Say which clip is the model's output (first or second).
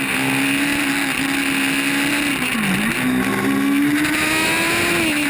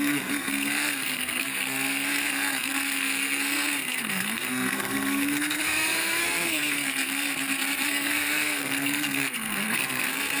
second